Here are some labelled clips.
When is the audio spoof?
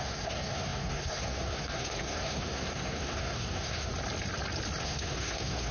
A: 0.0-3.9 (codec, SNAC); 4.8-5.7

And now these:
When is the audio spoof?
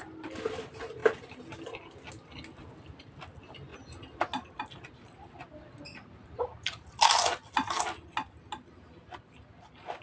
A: none